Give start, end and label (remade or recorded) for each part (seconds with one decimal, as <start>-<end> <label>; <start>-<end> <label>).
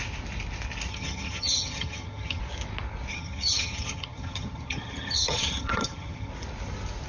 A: 0.0-0.9 recorded; 0.9-2.4 remade; 2.4-3.1 recorded; 3.1-6.3 remade; 6.3-7.1 recorded